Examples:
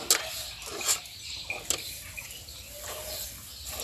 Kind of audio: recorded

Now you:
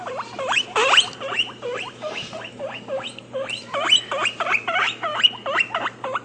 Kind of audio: remade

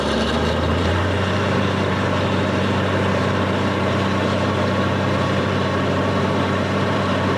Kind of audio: remade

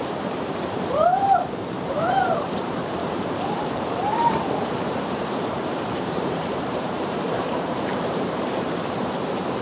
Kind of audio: remade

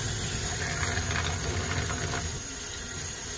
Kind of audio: recorded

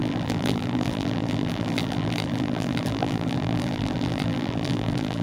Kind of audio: remade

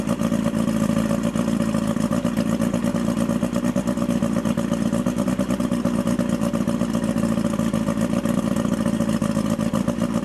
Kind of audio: remade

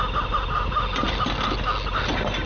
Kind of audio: recorded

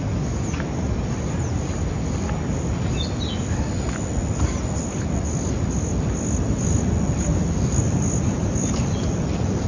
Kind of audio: recorded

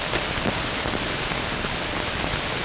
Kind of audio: remade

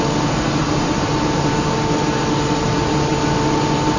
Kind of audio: recorded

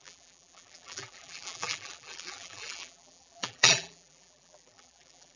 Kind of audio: remade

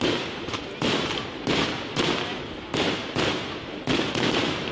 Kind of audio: remade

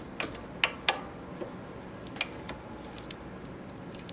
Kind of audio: recorded